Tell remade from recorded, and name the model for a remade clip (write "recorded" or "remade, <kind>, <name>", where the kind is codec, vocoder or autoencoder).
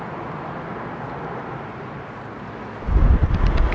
recorded